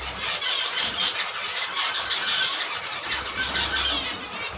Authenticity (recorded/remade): recorded